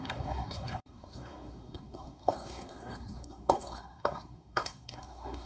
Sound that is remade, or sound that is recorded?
remade